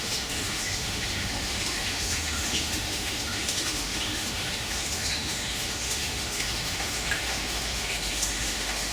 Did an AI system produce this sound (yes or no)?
yes